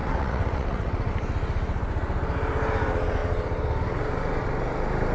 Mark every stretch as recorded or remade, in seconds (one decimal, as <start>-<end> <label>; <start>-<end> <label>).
0.0-1.1 remade; 1.1-5.1 recorded